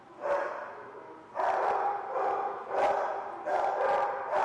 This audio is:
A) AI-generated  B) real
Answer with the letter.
B